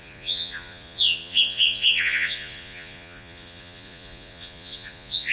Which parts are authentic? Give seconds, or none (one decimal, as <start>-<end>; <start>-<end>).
none